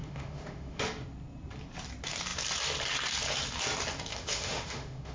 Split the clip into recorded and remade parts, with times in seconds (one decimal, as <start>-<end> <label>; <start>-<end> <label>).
0.0-0.8 remade; 0.8-4.1 recorded; 4.1-5.1 remade